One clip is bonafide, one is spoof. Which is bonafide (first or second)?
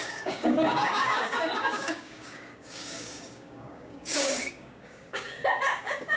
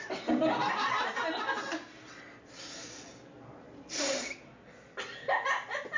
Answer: second